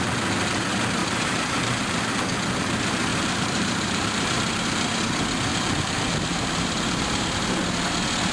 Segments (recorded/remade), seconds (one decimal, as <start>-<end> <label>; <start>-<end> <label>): 0.0-1.0 recorded; 1.0-2.2 remade; 2.2-3.1 recorded; 3.1-4.9 remade; 4.9-5.5 recorded; 5.5-7.5 remade; 7.5-8.3 recorded